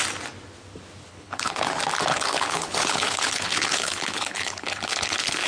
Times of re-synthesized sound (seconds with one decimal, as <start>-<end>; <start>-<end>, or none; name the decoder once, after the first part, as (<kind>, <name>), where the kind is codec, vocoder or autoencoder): 1.1-1.7 (codec, HILCodec); 2.1-5.5